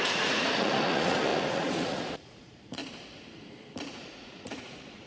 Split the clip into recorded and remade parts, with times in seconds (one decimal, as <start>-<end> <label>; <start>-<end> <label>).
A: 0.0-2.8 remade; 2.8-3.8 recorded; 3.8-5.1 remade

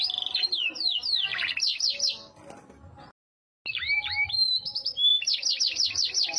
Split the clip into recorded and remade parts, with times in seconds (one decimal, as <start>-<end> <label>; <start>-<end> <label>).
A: 0.0-6.4 recorded

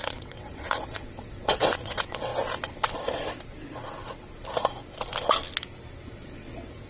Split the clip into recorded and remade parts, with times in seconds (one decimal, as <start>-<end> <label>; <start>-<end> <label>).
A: 0.0-2.3 remade; 2.3-6.1 recorded; 6.1-6.9 remade

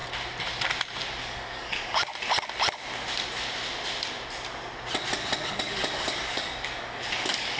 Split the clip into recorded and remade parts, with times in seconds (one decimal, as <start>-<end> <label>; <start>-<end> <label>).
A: 0.0-1.2 recorded; 1.2-2.1 remade; 2.1-5.5 recorded; 5.5-7.6 remade

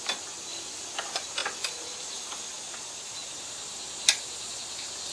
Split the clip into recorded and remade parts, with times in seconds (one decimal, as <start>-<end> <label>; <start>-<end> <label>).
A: 0.0-5.1 recorded